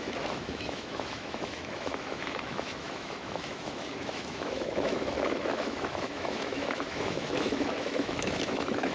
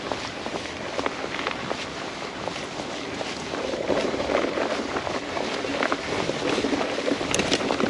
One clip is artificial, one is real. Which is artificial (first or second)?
first